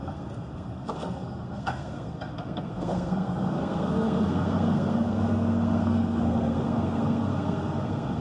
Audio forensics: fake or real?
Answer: fake